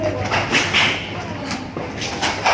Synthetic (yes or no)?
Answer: no